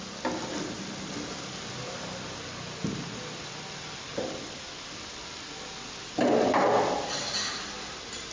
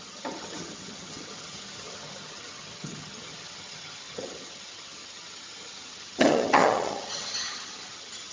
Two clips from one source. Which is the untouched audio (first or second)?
first